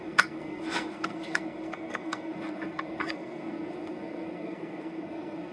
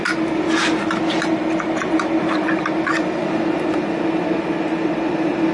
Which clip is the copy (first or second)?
first